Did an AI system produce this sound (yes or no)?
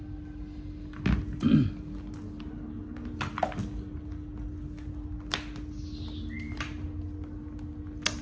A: no